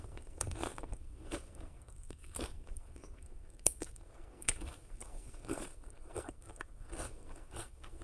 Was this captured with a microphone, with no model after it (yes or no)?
no